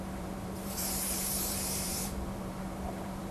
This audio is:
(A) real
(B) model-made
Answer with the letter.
B